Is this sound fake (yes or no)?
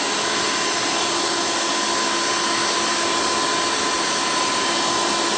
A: no